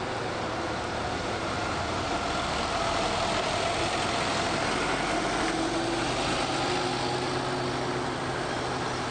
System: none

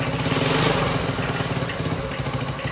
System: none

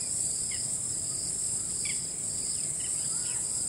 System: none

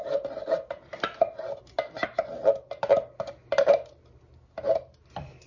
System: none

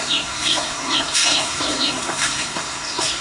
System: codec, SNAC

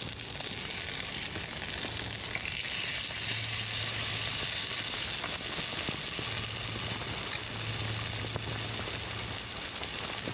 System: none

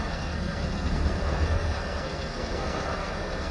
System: codec, SNAC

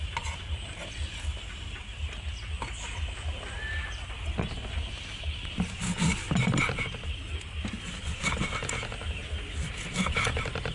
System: none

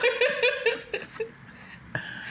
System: none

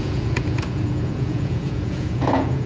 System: vocoder, Vocos